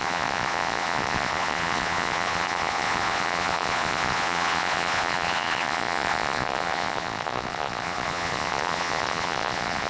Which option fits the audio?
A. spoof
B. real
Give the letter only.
A